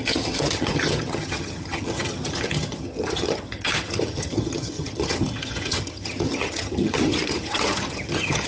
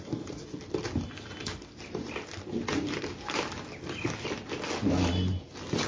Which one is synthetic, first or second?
first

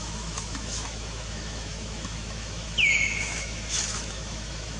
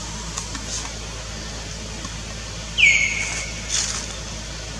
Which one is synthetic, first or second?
first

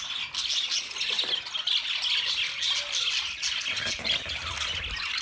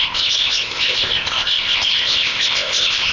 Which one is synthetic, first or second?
second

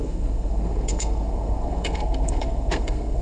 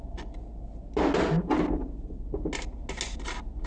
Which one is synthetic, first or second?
first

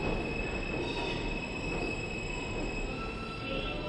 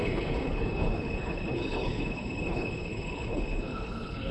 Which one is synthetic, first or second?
second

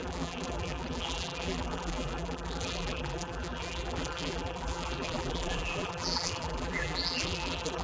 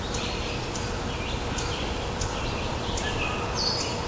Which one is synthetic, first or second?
first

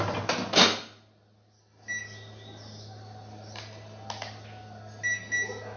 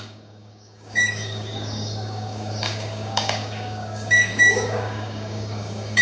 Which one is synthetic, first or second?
second